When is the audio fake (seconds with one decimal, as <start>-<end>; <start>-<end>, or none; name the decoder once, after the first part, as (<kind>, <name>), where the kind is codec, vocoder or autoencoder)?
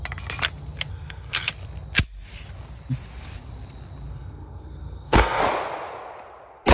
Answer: 0.9-1.5 (codec, SNAC); 4.1-5.4